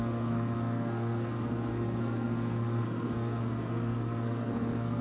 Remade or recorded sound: remade